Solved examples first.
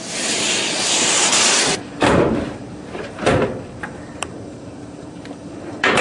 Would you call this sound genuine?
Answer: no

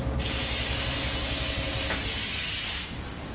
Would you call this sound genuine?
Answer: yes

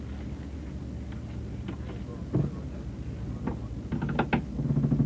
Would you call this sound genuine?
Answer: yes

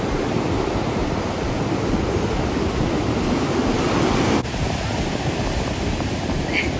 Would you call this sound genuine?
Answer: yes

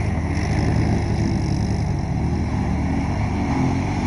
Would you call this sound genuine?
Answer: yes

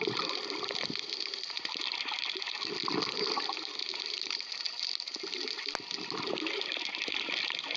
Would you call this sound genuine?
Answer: yes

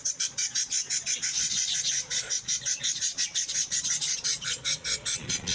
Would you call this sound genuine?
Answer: no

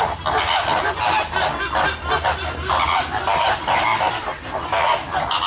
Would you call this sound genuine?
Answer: yes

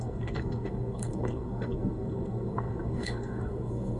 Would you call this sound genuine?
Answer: no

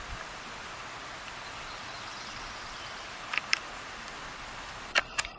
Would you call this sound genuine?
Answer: no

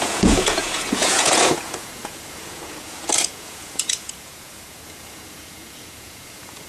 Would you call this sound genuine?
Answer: no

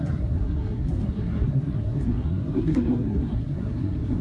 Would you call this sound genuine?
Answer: no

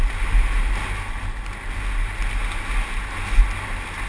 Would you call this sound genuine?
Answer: yes